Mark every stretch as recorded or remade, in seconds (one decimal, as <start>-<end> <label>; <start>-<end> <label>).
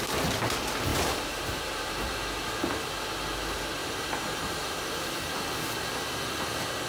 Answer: 0.0-0.9 recorded; 0.9-1.9 remade; 1.9-3.8 recorded; 3.8-5.3 remade; 5.3-6.9 recorded